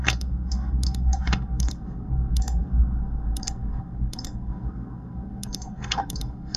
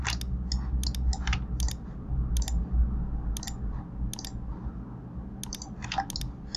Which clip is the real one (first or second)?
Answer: second